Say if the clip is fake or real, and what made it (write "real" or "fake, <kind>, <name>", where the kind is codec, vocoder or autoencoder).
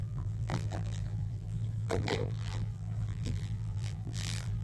fake, vocoder, BigVGAN v2